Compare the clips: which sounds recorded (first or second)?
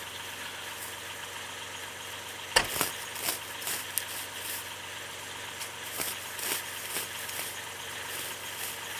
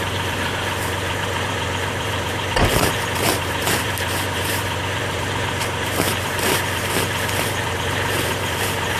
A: first